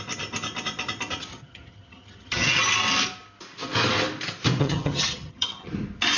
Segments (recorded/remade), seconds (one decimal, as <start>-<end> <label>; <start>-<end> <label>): 0.0-1.3 recorded; 1.3-2.6 remade; 2.6-4.6 recorded; 4.6-5.7 remade; 5.7-6.2 recorded